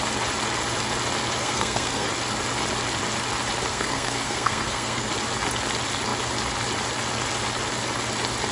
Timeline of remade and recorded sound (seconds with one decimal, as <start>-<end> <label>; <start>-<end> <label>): 0.0-1.4 recorded; 1.4-2.1 remade; 2.1-3.7 recorded; 3.7-5.1 remade; 5.1-8.5 recorded